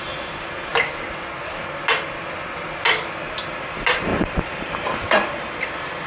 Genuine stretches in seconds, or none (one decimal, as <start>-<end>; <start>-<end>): 0.0-4.1; 5.6-6.1